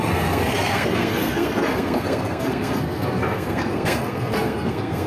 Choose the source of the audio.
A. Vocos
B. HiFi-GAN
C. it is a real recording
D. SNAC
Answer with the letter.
D